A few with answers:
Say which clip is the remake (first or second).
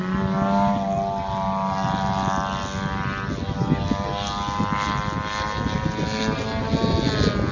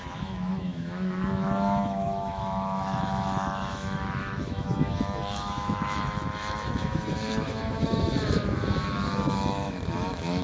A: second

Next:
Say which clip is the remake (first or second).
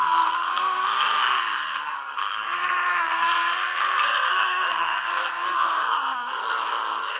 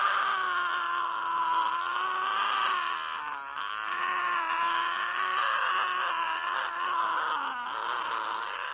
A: first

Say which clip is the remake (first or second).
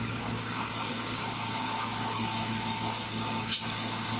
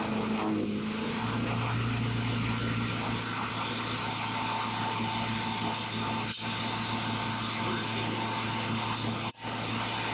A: first